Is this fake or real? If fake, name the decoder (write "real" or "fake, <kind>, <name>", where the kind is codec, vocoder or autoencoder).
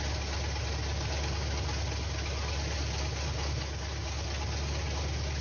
real